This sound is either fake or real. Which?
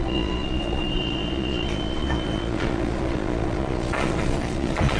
fake